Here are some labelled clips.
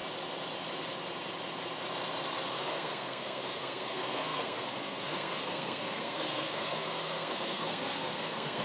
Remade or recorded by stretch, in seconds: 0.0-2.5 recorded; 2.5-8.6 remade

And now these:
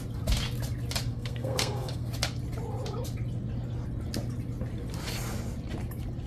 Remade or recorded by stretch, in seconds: 0.0-1.1 recorded; 1.1-2.1 remade; 2.1-6.3 recorded

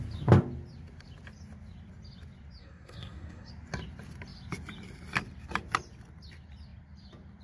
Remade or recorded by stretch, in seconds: 0.0-2.6 recorded; 2.6-3.5 remade; 3.5-7.4 recorded

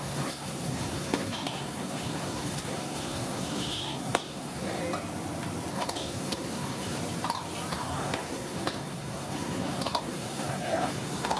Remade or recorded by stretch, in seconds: 0.0-4.8 remade; 4.8-5.7 recorded; 5.7-7.0 remade; 7.0-7.7 recorded; 7.7-11.4 remade